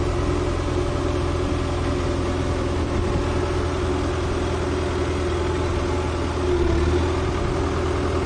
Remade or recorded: recorded